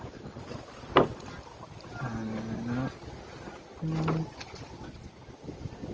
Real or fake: real